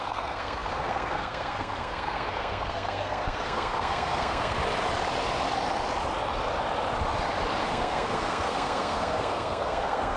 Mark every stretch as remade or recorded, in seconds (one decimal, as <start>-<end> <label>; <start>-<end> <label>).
0.0-4.6 remade; 4.6-7.6 recorded; 7.6-10.2 remade